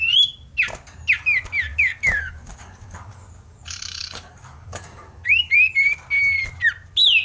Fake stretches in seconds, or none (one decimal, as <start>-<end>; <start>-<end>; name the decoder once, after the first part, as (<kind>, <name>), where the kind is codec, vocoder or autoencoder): 1.7-5.5 (codec, DAC)